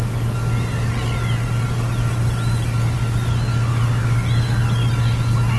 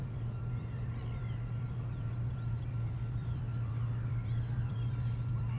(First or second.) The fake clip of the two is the second